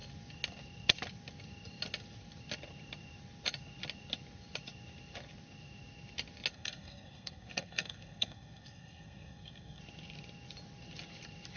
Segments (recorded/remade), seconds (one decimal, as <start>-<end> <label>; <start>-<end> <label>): 0.0-6.5 recorded; 6.5-9.8 remade; 9.8-11.6 recorded